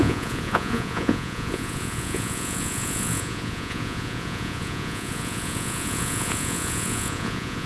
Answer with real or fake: fake